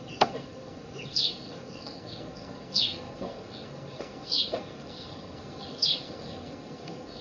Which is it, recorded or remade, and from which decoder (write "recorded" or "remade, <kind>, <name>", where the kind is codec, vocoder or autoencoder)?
remade, codec, SNAC